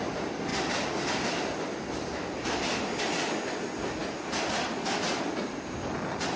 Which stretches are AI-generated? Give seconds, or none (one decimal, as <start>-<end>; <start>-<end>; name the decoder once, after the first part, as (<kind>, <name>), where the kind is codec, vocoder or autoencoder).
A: none